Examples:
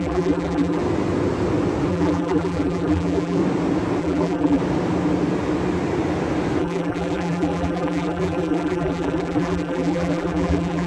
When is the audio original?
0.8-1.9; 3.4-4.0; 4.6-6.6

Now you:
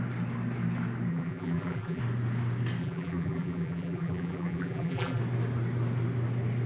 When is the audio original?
0.0-1.1; 2.0-2.8; 5.2-6.7

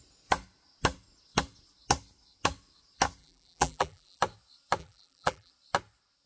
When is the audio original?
0.0-3.2; 4.2-4.8; 5.5-6.3

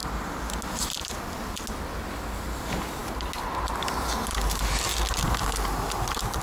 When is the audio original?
0.0-6.4